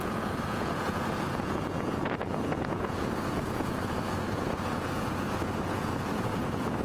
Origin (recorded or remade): remade